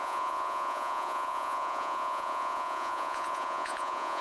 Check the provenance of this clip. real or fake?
fake